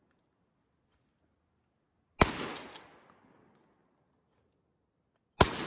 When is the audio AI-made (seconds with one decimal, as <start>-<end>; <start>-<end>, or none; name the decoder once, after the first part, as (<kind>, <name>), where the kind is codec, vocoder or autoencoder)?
none